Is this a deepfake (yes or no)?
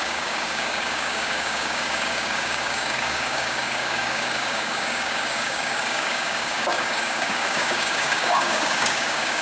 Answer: yes